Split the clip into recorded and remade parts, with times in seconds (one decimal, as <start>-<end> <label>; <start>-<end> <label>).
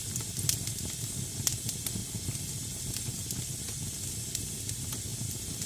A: 0.0-5.7 recorded